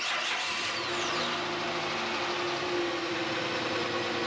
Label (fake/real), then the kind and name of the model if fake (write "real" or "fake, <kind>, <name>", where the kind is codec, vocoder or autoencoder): real